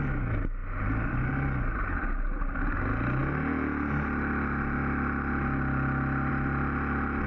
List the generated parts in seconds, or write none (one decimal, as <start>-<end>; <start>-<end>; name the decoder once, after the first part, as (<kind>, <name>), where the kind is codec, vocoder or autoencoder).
none